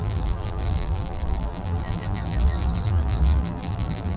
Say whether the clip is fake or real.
fake